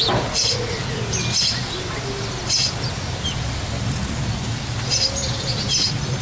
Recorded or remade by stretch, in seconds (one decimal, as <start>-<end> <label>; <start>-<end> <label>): 0.0-6.2 recorded